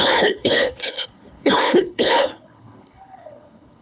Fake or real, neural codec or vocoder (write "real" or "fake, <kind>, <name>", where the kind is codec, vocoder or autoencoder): fake, codec, HILCodec